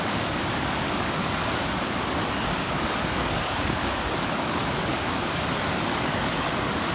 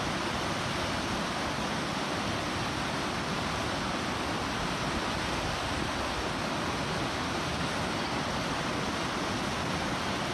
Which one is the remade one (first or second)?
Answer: first